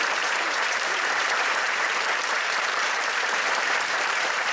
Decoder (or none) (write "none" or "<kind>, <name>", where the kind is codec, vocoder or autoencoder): vocoder, BigVGAN v2